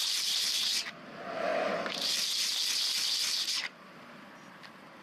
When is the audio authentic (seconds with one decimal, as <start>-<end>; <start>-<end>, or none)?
1.5-4.5